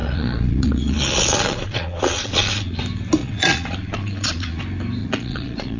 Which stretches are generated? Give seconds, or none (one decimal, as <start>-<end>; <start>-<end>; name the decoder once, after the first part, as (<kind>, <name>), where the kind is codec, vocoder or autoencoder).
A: 0.0-2.8 (vocoder, Vocos); 3.2-4.6; 5.0-5.8